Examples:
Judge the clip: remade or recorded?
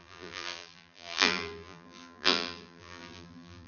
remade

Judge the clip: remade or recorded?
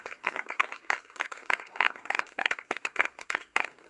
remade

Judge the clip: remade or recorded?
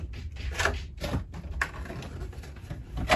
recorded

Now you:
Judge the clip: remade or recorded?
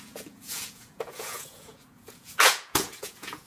remade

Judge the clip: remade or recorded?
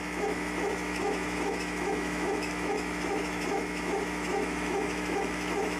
remade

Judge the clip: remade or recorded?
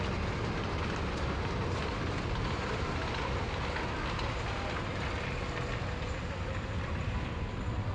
recorded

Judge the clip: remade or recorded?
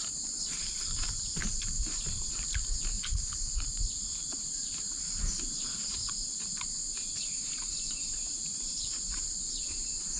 remade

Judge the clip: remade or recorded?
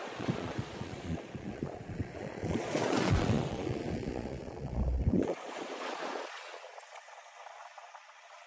remade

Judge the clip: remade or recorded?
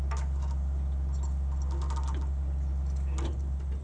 recorded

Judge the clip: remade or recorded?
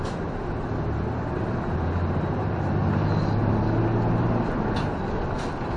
recorded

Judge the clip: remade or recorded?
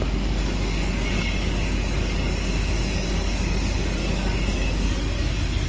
remade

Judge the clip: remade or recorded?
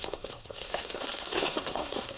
remade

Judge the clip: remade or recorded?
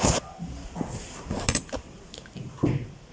recorded